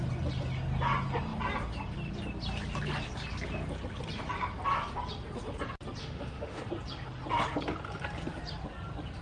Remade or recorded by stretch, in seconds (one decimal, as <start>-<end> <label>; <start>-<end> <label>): 0.0-6.0 recorded; 6.0-6.6 remade; 6.6-9.2 recorded